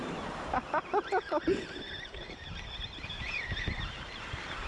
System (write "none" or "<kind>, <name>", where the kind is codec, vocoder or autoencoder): none